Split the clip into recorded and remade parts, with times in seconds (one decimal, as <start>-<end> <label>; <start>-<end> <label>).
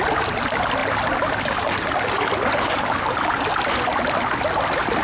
0.0-5.0 recorded